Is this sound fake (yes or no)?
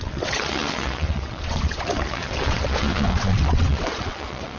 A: yes